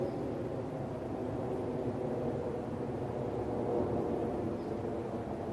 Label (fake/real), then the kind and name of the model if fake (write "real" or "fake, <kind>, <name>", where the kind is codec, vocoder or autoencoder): real